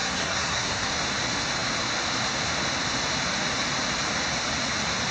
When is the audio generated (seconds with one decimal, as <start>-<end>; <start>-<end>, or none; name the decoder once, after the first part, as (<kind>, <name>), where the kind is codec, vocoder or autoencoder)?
0.0-0.9 (codec, SNAC)